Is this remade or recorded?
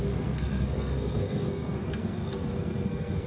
remade